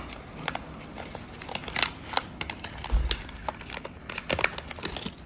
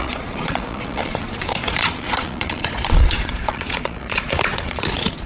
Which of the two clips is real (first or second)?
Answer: first